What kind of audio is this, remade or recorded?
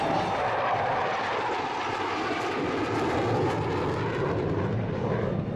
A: recorded